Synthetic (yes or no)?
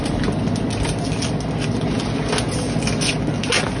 no